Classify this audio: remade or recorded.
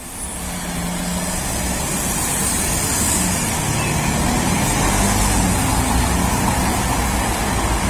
recorded